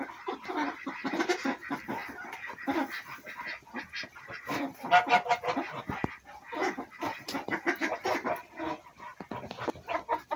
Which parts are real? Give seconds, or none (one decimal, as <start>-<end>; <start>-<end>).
0.0-10.4